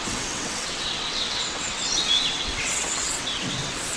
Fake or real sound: fake